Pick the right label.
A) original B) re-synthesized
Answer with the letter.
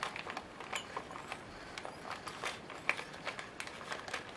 A